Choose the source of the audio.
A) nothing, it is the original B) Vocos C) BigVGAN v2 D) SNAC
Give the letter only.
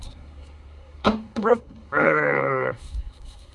D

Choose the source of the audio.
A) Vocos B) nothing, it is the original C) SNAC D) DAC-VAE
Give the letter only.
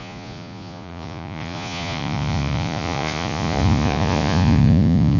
A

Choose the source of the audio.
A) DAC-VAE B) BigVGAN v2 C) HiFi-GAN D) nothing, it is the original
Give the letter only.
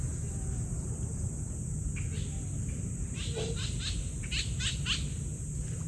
D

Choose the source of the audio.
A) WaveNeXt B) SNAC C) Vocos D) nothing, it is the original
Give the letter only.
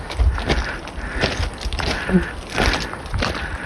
D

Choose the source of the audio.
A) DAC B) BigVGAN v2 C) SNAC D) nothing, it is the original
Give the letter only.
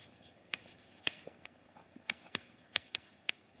C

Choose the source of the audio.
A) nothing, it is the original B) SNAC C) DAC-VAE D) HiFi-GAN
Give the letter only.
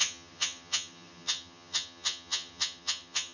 D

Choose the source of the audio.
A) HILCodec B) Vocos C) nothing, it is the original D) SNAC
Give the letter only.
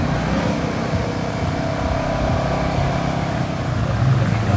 C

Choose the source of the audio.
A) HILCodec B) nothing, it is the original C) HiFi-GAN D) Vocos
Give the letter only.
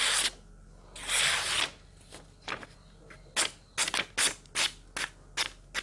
B